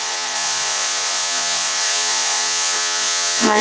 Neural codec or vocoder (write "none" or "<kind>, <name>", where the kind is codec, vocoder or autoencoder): vocoder, Vocos